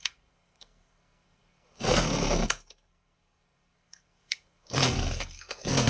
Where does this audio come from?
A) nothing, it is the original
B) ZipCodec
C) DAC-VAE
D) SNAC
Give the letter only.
D